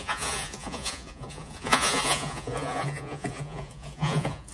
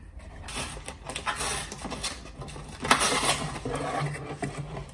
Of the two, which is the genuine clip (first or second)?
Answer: second